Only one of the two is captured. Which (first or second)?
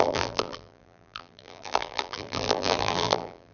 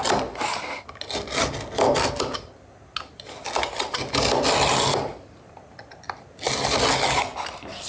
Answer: second